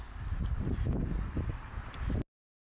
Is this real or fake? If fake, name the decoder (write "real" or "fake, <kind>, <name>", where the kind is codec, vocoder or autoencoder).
real